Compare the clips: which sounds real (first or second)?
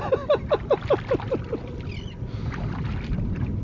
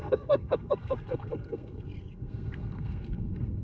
first